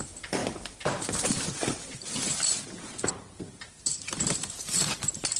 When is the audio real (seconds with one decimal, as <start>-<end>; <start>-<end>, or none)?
0.4-1.0